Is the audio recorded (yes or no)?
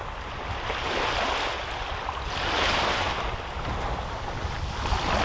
yes